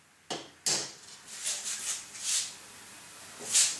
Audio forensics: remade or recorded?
recorded